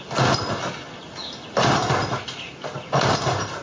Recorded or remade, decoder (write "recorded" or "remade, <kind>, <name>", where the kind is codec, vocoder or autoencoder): recorded